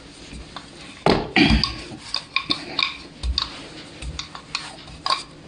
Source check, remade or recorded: recorded